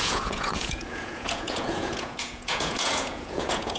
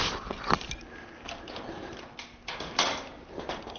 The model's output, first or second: first